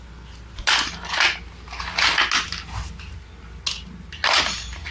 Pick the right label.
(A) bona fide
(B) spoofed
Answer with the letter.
A